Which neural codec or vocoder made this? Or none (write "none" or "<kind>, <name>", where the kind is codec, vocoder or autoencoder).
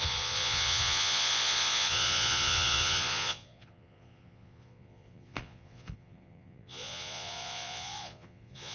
vocoder, Vocos